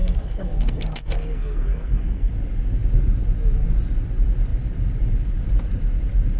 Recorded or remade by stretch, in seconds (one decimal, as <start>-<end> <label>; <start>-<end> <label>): 0.0-2.3 remade; 2.3-6.4 recorded